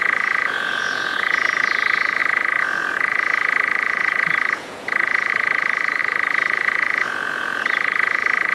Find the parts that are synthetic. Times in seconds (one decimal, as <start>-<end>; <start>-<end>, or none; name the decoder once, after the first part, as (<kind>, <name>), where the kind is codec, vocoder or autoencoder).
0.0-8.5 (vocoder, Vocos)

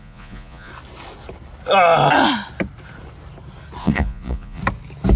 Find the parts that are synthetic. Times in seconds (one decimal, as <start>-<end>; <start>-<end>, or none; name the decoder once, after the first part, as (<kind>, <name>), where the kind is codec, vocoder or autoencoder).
0.0-0.7 (vocoder, Vocos); 3.8-4.6

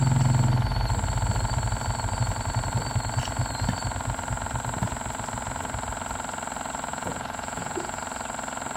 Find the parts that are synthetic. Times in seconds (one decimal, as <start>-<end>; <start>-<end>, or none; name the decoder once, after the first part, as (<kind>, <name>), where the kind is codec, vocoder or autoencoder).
6.9-8.0 (vocoder, Vocos)